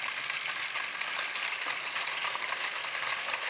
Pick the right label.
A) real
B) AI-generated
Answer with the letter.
A